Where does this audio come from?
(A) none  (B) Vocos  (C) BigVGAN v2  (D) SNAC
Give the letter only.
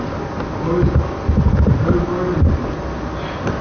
A